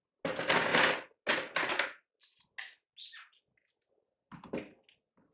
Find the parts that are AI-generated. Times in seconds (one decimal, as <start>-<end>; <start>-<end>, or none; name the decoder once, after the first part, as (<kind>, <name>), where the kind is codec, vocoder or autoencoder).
none